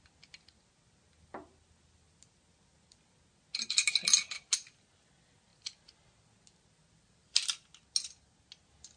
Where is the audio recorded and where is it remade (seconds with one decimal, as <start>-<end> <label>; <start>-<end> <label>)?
0.0-9.0 recorded